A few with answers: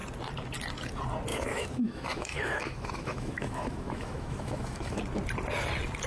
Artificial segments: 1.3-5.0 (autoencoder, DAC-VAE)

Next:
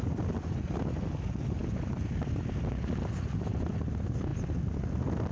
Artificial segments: none

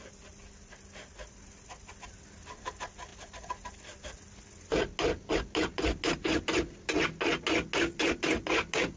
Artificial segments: none

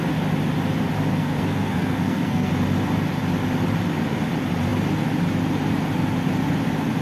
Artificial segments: 1.1-2.5 (codec, SNAC)

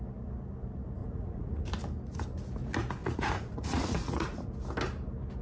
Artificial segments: 1.0-1.6 (vocoder, Vocos); 3.0-4.5